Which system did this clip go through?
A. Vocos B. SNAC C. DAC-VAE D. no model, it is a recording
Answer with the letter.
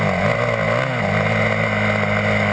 D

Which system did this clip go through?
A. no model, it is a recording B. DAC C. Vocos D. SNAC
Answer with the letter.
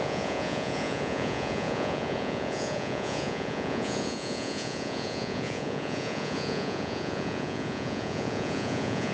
C